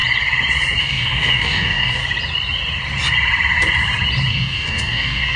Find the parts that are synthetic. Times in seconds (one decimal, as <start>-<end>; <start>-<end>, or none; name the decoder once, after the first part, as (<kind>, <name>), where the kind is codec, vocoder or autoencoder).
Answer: 0.8-2.0 (codec, DAC); 4.3-5.4